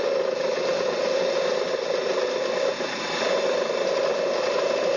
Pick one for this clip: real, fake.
real